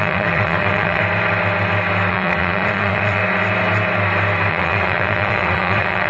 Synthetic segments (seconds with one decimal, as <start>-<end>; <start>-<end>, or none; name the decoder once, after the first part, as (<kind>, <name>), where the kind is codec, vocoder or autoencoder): 0.0-1.0 (vocoder, WaveNeXt); 2.1-3.2; 4.5-6.1